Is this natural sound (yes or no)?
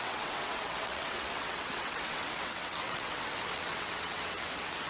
no